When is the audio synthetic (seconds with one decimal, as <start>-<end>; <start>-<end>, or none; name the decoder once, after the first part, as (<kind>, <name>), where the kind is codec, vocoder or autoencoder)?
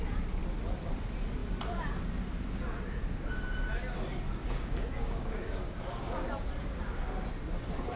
4.4-6.4 (codec, DAC)